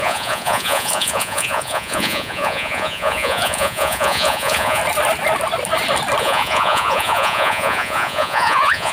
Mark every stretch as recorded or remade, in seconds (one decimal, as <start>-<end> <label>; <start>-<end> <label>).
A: 0.0-4.8 remade; 4.8-6.2 recorded; 6.2-8.9 remade